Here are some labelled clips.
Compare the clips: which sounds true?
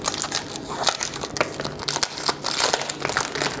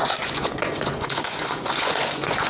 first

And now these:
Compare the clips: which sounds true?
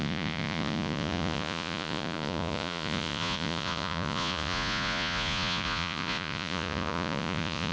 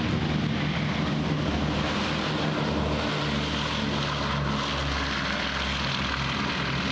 second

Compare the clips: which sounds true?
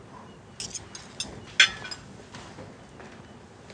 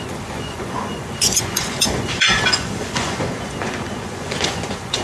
first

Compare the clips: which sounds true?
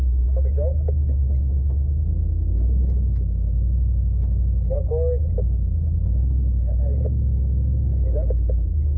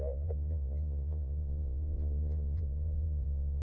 first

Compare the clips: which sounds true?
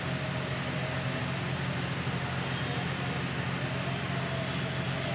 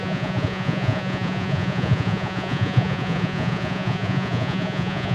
first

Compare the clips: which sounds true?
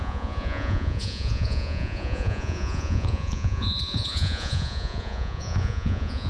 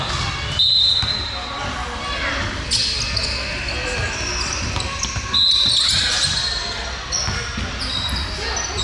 second